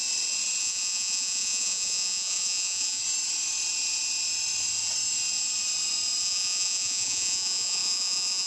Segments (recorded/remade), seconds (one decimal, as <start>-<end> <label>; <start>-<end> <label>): 0.0-0.6 recorded; 0.6-3.0 remade; 3.0-6.2 recorded; 6.2-8.5 remade